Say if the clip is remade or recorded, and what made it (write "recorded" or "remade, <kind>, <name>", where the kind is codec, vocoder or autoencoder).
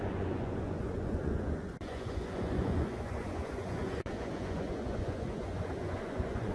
remade, vocoder, Vocos